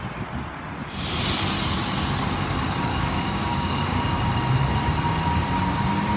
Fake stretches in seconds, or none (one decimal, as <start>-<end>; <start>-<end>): 2.9-4.3